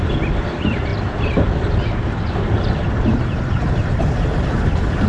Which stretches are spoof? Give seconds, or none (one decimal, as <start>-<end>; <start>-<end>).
none